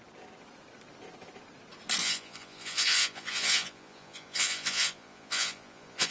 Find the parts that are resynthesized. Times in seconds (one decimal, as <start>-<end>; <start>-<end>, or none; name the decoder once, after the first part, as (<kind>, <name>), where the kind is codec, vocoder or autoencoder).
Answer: 2.0-6.1 (vocoder, Vocos)